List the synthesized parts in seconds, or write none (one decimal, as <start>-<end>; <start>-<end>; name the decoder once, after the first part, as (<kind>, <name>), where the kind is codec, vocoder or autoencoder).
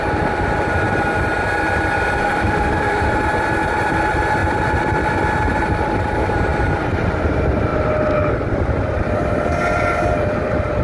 2.2-3.1 (autoencoder, DAC-VAE)